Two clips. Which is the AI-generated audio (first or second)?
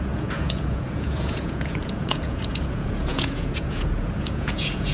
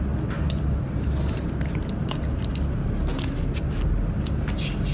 first